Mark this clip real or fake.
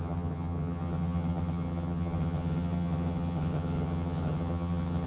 fake